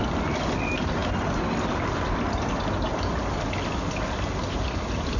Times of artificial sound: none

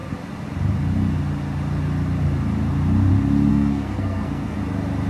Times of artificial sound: 3.5-4.6 (codec, SNAC)

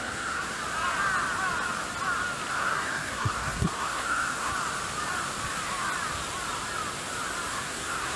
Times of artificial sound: 0.0-0.6 (codec, SNAC); 2.5-4.5; 7.5-8.2

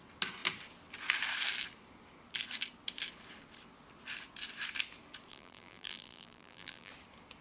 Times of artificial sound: 5.3-6.9 (vocoder, BigVGAN v2)

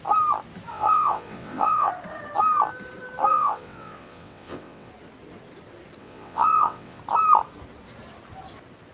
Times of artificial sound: 0.7-1.9 (vocoder, WaveNeXt); 3.3-4.9; 6.0-7.0

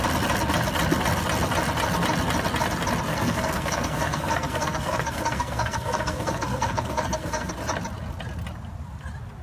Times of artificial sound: 3.1-7.5 (codec, SNAC)

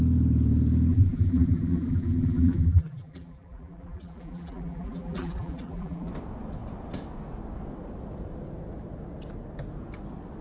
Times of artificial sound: 0.9-6.1 (vocoder, BigVGAN v2)

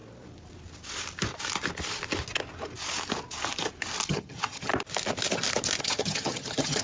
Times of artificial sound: 4.1-4.7 (vocoder, HiFi-GAN); 5.8-6.8